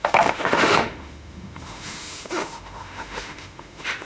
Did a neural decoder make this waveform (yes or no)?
yes